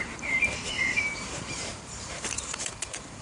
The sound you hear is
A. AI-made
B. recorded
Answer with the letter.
A